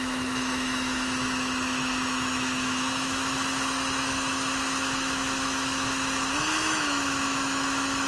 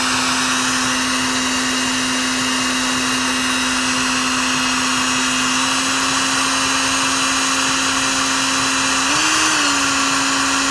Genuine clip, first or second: second